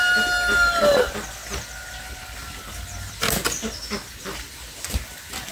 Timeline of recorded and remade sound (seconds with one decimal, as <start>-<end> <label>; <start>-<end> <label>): 0.0-5.5 recorded